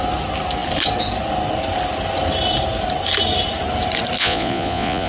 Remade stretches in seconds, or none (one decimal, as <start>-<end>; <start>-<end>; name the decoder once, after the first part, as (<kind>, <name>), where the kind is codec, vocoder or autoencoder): 4.2-5.1 (vocoder, Vocos)